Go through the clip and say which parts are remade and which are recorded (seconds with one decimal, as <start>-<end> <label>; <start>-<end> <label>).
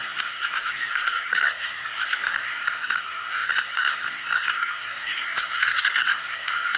0.0-6.8 remade